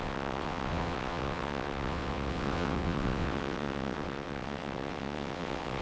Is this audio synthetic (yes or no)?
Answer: yes